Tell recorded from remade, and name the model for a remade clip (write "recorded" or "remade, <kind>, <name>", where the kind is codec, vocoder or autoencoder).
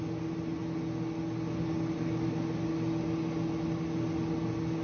recorded